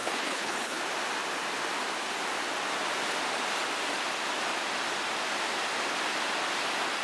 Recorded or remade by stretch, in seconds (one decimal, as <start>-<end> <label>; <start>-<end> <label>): 0.0-0.8 remade; 0.8-7.0 recorded